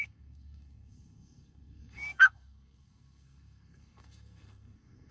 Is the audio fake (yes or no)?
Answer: yes